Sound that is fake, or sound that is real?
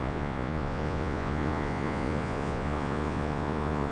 fake